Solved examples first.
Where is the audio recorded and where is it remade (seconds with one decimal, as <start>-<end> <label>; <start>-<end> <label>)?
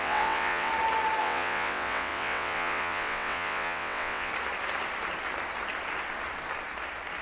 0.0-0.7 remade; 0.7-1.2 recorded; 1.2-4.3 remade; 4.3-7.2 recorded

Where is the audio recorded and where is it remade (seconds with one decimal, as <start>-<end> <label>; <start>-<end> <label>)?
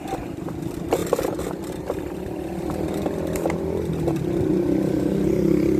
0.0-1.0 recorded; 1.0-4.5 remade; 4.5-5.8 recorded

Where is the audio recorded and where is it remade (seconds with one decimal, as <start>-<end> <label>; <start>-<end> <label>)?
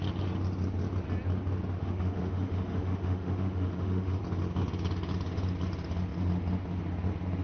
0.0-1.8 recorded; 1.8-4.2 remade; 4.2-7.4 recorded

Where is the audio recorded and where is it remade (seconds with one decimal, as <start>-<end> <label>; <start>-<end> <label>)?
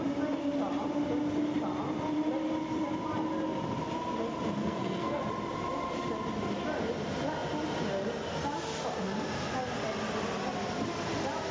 0.0-4.6 recorded; 4.6-5.2 remade; 5.2-11.5 recorded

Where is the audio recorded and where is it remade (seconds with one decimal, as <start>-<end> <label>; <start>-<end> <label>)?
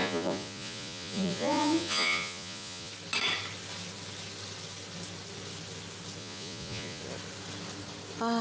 0.0-2.9 remade; 2.9-6.2 recorded; 6.2-7.0 remade; 7.0-8.4 recorded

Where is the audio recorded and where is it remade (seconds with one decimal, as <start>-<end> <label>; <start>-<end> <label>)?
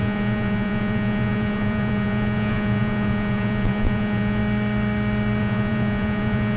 0.0-4.4 remade; 4.4-5.4 recorded; 5.4-6.6 remade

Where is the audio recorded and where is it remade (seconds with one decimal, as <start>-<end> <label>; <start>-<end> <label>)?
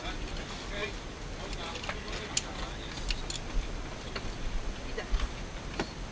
0.0-6.1 recorded